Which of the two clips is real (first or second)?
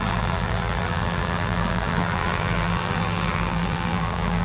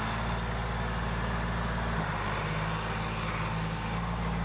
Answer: second